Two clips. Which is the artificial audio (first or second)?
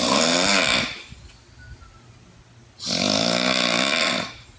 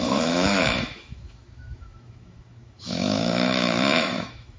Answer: second